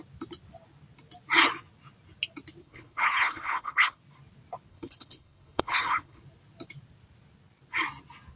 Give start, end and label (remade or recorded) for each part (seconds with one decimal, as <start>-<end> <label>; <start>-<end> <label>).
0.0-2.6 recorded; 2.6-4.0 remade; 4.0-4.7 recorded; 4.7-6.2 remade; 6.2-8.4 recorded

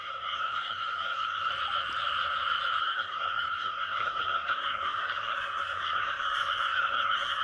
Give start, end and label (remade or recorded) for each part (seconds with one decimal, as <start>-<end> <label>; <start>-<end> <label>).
0.0-1.5 remade; 1.5-2.8 recorded; 2.8-7.4 remade

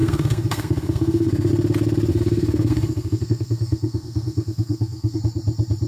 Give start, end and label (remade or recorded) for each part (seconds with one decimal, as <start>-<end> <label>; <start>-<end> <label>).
0.0-1.5 remade; 1.5-2.1 recorded; 2.1-5.2 remade; 5.2-5.9 recorded